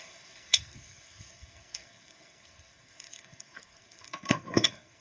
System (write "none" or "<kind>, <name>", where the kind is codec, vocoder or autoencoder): codec, SNAC